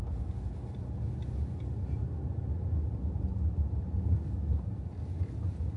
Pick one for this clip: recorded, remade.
recorded